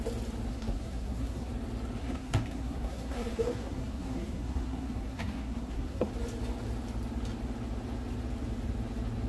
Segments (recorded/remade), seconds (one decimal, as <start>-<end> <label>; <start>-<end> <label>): 0.0-0.5 recorded; 0.5-1.5 remade; 1.5-2.0 recorded; 2.0-6.1 remade; 6.1-9.3 recorded